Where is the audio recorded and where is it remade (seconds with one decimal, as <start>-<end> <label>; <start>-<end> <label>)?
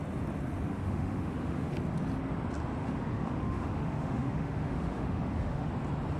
0.0-0.7 recorded; 0.7-1.7 remade; 1.7-2.8 recorded; 2.8-5.7 remade; 5.7-6.2 recorded